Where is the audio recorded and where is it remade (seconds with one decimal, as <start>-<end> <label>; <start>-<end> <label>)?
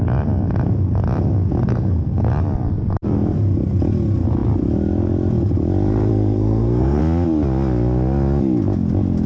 0.0-1.7 recorded; 1.7-2.3 remade; 2.3-6.1 recorded; 6.1-7.0 remade; 7.0-9.3 recorded